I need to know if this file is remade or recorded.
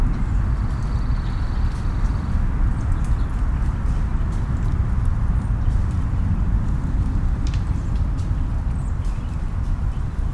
recorded